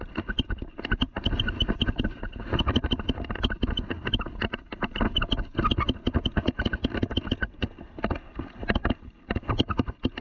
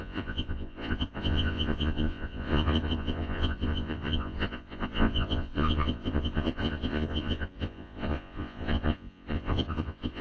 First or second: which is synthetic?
second